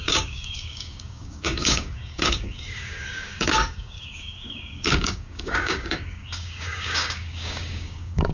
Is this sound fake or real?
fake